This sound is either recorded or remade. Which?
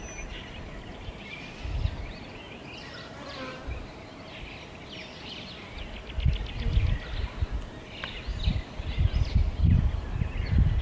recorded